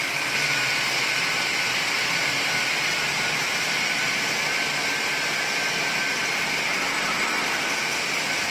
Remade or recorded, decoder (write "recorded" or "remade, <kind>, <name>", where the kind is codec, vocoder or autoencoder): recorded